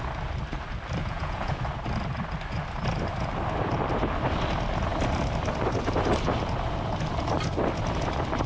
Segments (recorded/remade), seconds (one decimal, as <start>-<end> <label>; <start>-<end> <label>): 0.0-1.0 recorded; 1.0-1.6 remade; 1.6-8.5 recorded